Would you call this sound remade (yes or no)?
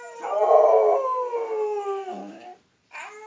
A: no